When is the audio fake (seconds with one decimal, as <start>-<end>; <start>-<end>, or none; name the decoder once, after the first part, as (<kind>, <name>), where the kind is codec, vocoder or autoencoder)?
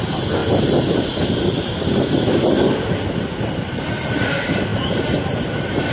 0.4-1.3 (vocoder, BigVGAN v2)